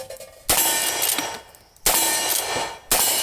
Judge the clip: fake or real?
real